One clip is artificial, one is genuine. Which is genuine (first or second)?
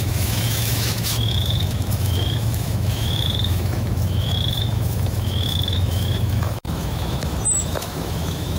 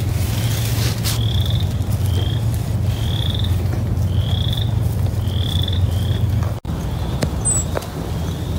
second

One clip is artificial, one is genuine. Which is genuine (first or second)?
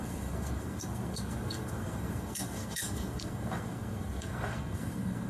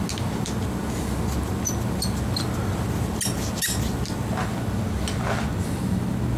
second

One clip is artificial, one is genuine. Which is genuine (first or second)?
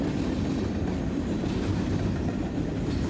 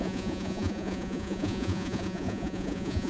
first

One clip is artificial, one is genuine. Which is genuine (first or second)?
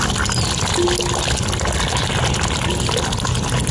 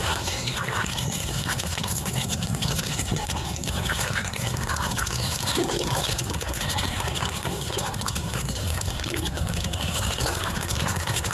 first